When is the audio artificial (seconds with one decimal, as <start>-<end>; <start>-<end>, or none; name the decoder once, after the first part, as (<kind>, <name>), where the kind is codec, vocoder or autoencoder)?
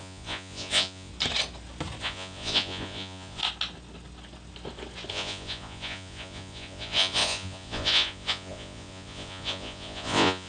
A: 0.0-1.1 (vocoder, Vocos); 2.0-3.4; 5.1-10.5